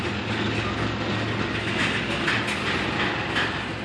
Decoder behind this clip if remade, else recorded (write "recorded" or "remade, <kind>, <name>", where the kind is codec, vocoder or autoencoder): recorded